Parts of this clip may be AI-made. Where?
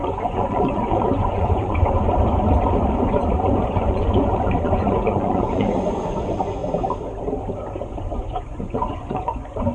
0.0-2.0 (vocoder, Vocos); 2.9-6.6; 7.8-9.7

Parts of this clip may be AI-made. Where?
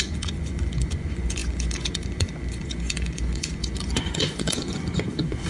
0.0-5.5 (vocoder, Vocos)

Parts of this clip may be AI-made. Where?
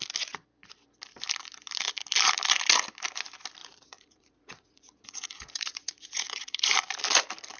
3.6-6.7 (vocoder, Vocos)